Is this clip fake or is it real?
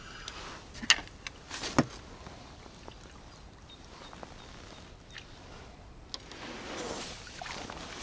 real